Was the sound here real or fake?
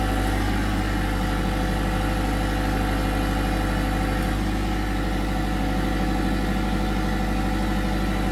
real